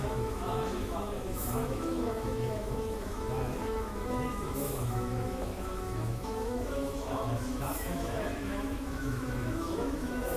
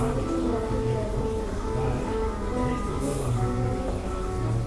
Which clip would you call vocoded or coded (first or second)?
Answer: first